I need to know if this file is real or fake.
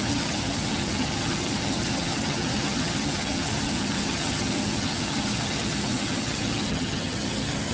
fake